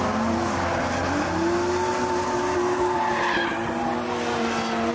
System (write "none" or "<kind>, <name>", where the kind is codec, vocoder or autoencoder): none